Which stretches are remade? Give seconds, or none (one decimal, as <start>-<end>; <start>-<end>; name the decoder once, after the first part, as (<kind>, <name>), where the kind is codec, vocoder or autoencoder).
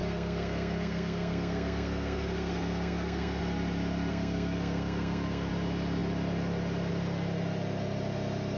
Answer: 0.0-3.4 (codec, SNAC); 4.1-5.5